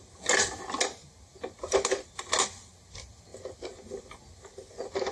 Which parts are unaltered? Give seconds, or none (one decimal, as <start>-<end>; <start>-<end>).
0.0-5.1

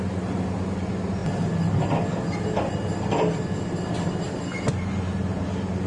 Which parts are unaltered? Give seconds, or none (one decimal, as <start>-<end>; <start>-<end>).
0.0-5.9

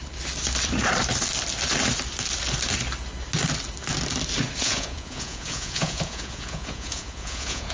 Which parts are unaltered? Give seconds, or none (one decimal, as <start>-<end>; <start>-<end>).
0.0-4.6

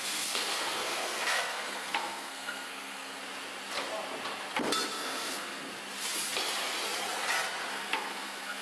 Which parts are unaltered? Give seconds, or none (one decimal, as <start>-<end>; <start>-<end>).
3.2-4.9; 5.8-7.7

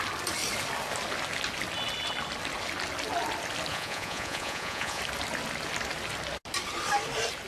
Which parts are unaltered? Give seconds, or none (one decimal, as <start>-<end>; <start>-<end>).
0.0-3.7; 5.0-7.5

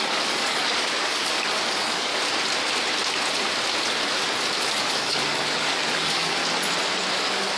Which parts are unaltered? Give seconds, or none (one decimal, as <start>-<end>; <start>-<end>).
2.1-4.6; 6.4-7.1

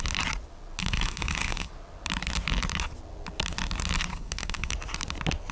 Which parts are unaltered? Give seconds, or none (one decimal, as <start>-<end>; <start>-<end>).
0.0-0.8; 1.7-4.1; 4.7-5.5

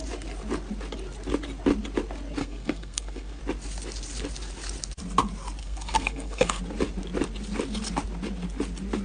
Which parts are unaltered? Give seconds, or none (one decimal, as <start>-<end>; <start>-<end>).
0.0-2.4; 3.4-5.6; 6.6-9.0